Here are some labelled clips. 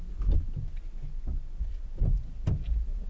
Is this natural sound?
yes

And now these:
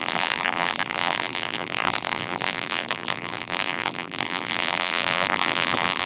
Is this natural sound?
no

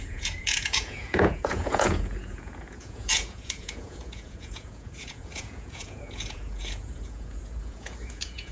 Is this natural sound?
no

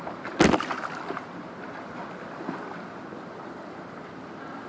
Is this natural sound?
yes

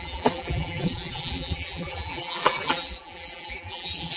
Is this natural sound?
no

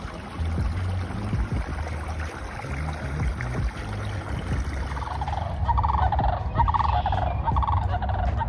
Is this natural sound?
yes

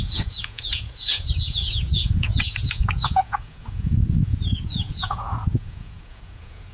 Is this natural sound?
no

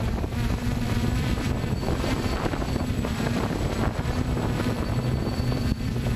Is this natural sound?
no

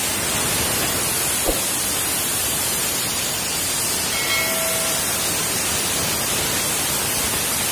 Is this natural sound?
yes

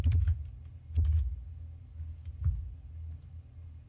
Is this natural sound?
yes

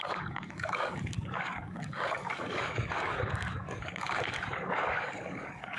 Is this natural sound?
no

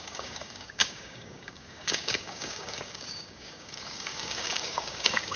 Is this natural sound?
no